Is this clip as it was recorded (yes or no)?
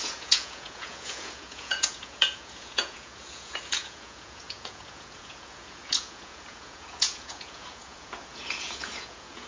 no